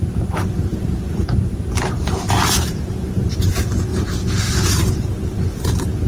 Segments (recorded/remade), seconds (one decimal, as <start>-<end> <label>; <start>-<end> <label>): 0.0-3.9 remade; 3.9-4.8 recorded; 4.8-6.1 remade